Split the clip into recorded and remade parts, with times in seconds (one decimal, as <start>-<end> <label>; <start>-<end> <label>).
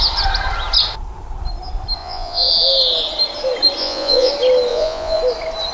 0.0-2.0 recorded; 2.0-2.5 remade; 2.5-3.8 recorded; 3.8-4.3 remade; 4.3-4.7 recorded; 4.7-5.2 remade; 5.2-5.7 recorded